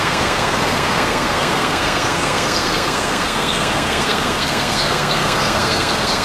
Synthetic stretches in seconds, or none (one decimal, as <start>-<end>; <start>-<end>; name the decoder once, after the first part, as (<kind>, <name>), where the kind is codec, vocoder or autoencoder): 0.0-6.2 (codec, SNAC)